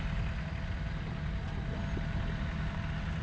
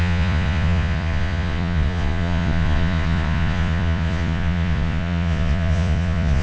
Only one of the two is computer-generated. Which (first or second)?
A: second